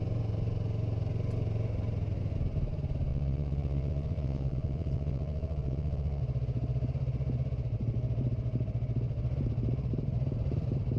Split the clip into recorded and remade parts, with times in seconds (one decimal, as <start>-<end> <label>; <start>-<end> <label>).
0.0-3.1 recorded; 3.1-6.2 remade; 6.2-11.0 recorded